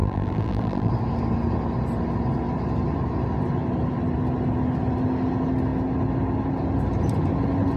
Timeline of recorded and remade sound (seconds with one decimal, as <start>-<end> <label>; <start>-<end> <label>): 0.0-0.9 remade; 0.9-7.8 recorded